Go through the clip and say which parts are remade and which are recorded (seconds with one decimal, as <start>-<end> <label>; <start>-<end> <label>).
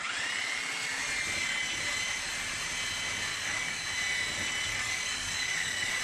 0.0-3.3 recorded; 3.3-3.8 remade; 3.8-4.7 recorded; 4.7-6.0 remade